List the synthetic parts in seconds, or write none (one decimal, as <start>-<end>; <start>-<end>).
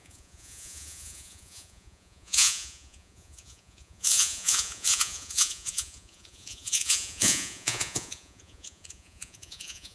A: 0.0-9.9